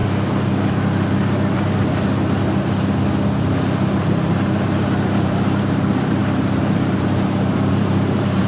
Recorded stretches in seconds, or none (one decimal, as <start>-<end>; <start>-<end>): 0.0-4.8